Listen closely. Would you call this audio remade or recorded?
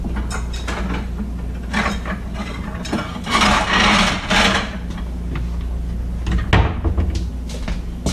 recorded